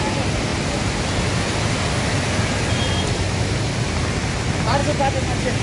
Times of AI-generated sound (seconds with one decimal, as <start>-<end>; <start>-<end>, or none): none